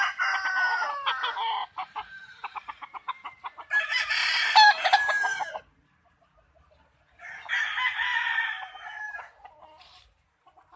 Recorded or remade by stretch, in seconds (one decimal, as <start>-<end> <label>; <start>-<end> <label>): 0.0-1.6 recorded; 1.6-3.8 remade; 3.8-4.2 recorded; 4.2-5.5 remade; 5.5-10.8 recorded